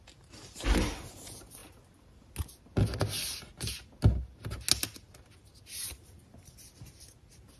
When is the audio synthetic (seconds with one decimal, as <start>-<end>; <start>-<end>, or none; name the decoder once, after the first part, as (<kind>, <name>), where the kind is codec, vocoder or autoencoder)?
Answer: none